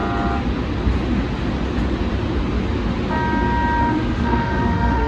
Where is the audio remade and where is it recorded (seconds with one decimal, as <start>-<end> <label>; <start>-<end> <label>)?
0.0-3.8 recorded; 3.8-5.1 remade